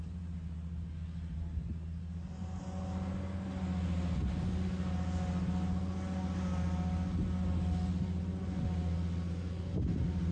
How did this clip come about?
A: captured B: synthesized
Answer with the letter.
A